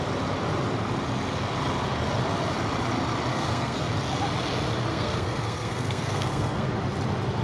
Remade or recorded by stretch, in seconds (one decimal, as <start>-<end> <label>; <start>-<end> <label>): 0.0-3.3 recorded; 3.3-3.9 remade; 3.9-4.9 recorded; 4.9-6.7 remade; 6.7-7.4 recorded